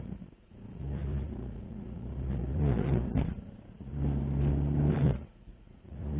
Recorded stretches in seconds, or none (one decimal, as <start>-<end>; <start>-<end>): 3.9-5.0